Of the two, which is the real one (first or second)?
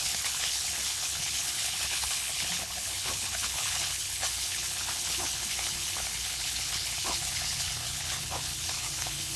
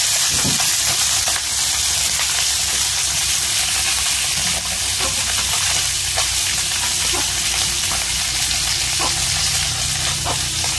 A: second